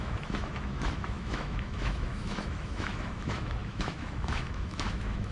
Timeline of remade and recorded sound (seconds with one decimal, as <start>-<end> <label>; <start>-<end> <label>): 0.0-5.3 remade